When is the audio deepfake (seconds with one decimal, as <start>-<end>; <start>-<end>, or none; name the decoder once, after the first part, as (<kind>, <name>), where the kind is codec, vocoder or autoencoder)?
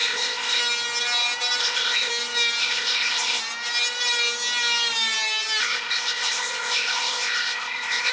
0.0-0.6 (codec, ZipCodec); 1.6-2.1; 2.6-3.4; 5.6-8.1